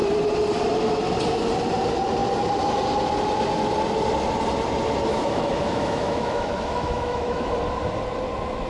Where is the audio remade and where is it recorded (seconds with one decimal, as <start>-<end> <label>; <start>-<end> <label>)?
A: 0.0-5.1 recorded; 5.1-7.5 remade; 7.5-8.7 recorded